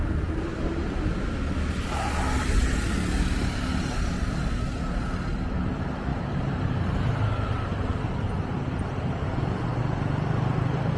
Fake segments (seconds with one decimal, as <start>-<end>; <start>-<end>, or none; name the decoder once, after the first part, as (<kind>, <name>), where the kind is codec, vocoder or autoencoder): 6.1-7.9 (vocoder, BigVGAN v2)